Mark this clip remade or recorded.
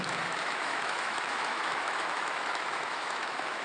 remade